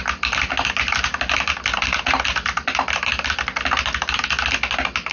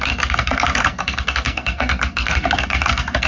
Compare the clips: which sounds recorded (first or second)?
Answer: first